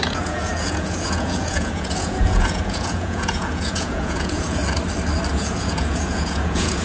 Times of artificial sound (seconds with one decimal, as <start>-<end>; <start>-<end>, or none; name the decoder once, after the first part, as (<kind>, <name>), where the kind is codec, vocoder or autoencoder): 0.0-4.6 (vocoder, Vocos); 5.3-6.8